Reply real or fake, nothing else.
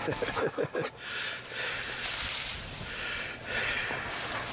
real